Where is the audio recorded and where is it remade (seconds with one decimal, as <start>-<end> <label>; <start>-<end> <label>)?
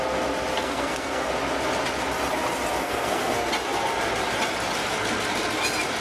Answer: 0.0-0.5 recorded; 0.5-1.3 remade; 1.3-2.8 recorded; 2.8-3.5 remade; 3.5-6.0 recorded